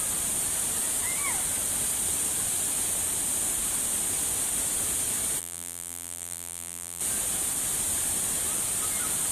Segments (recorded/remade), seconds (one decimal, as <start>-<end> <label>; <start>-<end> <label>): 0.0-5.4 recorded; 5.4-7.0 remade; 7.0-9.3 recorded